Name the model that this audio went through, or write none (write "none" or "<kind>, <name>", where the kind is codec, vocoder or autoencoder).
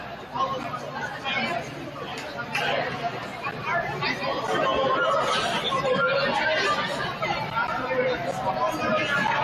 none